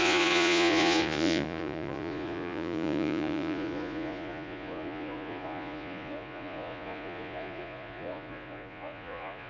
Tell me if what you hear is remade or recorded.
remade